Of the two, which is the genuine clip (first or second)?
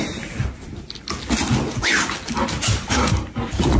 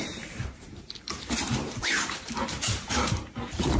first